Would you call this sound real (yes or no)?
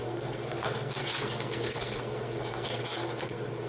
no